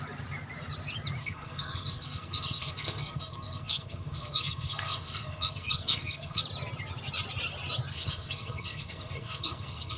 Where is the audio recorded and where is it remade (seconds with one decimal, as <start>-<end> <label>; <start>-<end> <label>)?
0.0-1.2 recorded; 1.2-6.4 remade; 6.4-7.9 recorded; 7.9-10.0 remade